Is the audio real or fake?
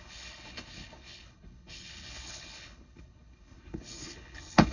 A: fake